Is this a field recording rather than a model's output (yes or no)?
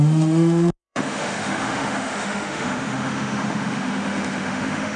no